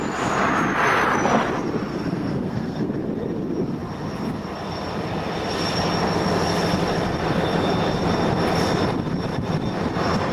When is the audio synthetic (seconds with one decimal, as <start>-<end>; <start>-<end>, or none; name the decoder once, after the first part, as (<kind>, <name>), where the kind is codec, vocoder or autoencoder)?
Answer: 1.9-2.9 (codec, SNAC)

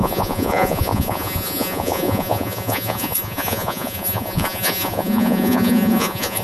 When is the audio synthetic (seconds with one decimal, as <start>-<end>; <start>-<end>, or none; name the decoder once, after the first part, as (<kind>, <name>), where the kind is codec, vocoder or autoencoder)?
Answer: 0.0-6.4 (vocoder, Vocos)

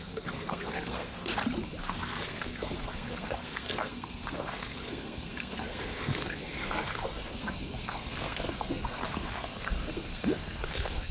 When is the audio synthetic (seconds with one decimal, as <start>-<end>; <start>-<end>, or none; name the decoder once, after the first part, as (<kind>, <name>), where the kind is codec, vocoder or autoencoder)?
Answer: 0.0-1.3 (codec, SNAC); 1.8-11.1

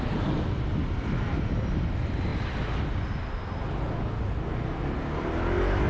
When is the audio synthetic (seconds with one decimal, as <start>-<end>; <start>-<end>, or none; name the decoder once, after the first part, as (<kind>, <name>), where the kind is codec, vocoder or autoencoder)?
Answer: none

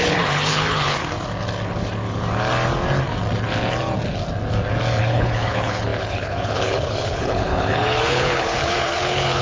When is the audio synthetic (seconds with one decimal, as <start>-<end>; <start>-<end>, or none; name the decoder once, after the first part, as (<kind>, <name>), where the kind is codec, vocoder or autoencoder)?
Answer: 0.0-1.0 (codec, HILCodec); 5.0-9.4

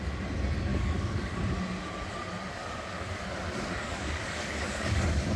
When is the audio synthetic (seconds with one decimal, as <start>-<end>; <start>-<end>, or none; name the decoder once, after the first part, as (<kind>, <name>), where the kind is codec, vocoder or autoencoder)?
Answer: 0.7-1.4 (codec, DAC); 2.5-5.4

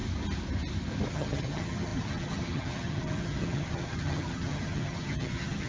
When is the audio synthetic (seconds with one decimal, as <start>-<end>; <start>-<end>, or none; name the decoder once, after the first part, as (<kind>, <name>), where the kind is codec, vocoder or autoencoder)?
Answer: 1.1-5.7 (vocoder, HiFi-GAN)

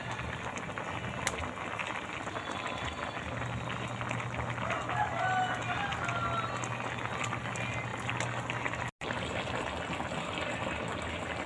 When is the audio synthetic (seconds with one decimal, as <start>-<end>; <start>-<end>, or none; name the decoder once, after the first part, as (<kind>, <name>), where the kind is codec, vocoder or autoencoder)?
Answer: none